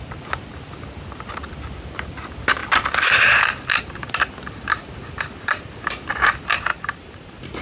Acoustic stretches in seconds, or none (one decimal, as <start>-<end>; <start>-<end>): 0.0-6.7